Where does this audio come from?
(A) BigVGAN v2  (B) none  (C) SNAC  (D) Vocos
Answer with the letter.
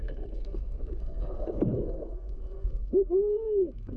C